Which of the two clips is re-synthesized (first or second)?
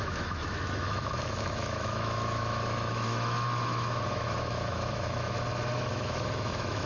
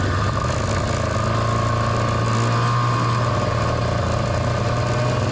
first